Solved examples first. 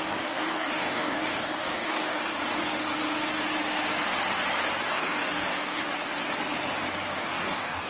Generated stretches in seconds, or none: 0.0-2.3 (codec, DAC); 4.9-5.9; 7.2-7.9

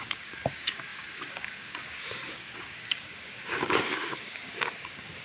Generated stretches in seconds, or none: 0.0-5.2 (codec, DAC)

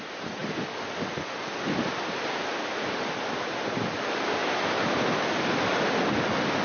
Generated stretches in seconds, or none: none